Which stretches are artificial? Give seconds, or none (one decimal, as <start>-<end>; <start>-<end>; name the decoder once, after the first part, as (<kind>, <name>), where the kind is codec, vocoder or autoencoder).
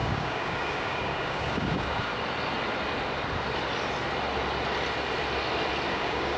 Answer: 0.0-2.1 (codec, DAC); 5.9-6.4